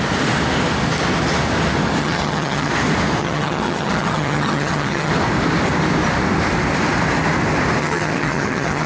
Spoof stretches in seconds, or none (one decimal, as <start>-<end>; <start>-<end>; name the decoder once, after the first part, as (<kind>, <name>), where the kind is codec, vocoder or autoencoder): 2.0-2.7 (vocoder, HiFi-GAN); 3.2-5.1; 7.8-8.9